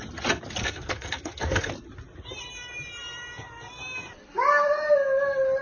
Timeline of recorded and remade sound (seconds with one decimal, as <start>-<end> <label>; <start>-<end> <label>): 0.0-0.6 recorded; 0.6-1.7 remade; 1.7-5.6 recorded